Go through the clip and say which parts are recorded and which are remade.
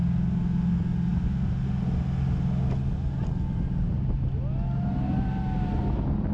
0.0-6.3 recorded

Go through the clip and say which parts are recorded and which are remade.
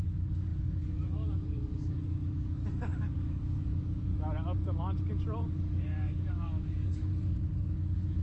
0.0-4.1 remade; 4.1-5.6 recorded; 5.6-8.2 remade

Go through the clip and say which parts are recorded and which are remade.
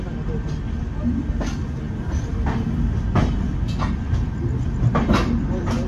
0.0-5.9 recorded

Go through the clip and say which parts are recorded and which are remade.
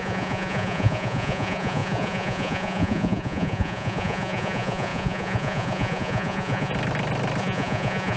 0.0-6.7 remade; 6.7-7.4 recorded; 7.4-8.2 remade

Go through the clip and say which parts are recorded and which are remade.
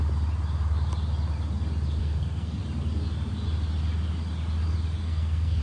0.0-2.0 recorded; 2.0-2.6 remade; 2.6-5.0 recorded; 5.0-5.6 remade